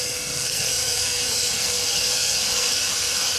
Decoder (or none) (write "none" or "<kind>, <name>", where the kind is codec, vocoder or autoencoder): codec, SNAC